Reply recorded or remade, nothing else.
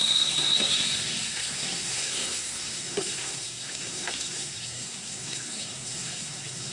remade